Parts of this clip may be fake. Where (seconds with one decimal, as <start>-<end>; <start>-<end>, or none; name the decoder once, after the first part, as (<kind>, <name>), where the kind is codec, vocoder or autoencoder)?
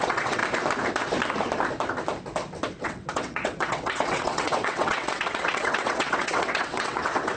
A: 0.0-0.4 (vocoder, WaveNeXt); 2.8-7.4